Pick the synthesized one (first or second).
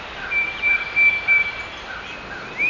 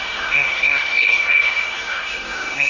second